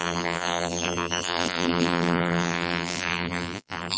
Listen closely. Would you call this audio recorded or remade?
remade